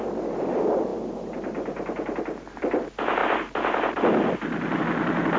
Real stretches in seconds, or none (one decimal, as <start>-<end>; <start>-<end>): 0.0-5.4